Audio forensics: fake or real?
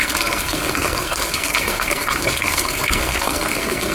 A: fake